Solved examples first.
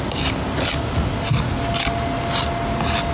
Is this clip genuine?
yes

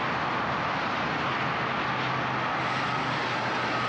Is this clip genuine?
yes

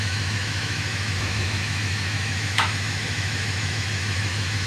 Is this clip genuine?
no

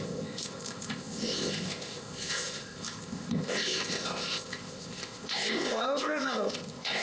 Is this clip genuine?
no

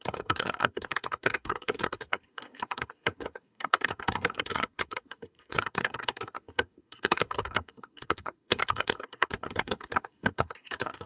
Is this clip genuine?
no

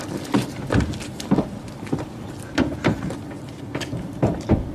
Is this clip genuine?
yes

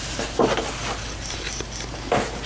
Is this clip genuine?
yes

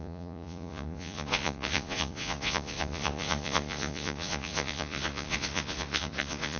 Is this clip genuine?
no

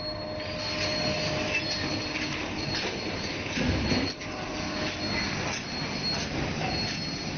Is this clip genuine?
yes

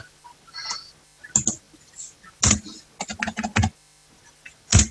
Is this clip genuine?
yes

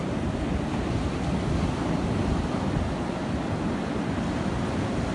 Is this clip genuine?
yes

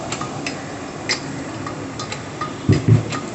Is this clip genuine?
yes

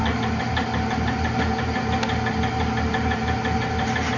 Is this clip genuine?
yes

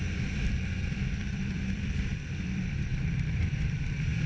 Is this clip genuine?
no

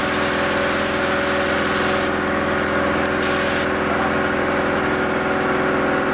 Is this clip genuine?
yes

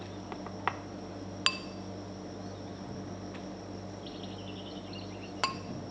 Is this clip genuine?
yes